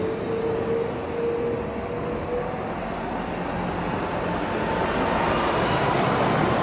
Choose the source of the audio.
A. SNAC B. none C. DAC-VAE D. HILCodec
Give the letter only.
B